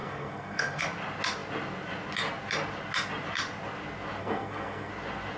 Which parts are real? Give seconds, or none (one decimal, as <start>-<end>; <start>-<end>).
0.8-4.2; 4.9-5.4